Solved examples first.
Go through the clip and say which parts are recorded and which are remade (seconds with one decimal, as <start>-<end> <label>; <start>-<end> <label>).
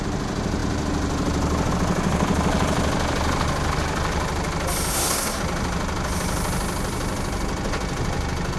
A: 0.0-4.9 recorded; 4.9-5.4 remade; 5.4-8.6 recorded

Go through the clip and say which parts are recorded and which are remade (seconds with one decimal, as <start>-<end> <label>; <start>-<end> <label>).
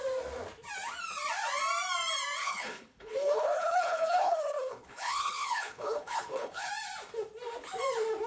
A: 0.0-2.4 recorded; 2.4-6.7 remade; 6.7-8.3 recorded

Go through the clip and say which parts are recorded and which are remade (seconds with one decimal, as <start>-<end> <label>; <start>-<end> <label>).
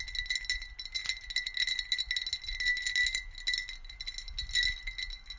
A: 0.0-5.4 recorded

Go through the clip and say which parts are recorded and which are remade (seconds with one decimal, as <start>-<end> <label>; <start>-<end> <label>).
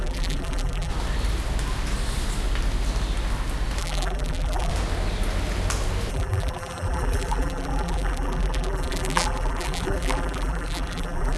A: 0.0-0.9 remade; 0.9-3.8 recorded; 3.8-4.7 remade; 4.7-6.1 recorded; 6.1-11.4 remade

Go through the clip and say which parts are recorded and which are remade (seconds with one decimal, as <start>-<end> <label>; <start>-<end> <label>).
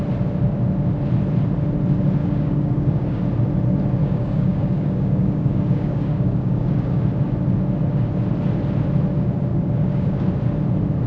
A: 0.0-2.2 recorded; 2.2-3.2 remade; 3.2-4.0 recorded; 4.0-7.0 remade; 7.0-9.5 recorded; 9.5-10.3 remade; 10.3-11.1 recorded